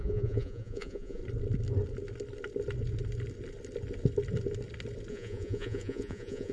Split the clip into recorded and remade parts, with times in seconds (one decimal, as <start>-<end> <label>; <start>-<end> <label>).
0.0-1.2 remade; 1.2-5.1 recorded; 5.1-6.5 remade